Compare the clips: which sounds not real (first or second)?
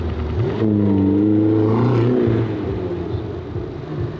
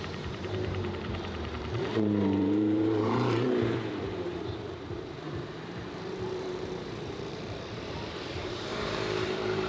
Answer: second